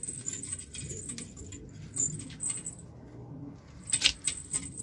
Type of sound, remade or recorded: recorded